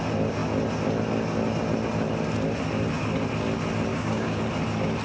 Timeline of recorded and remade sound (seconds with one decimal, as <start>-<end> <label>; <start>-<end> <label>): 0.0-3.9 recorded; 3.9-4.4 remade; 4.4-5.0 recorded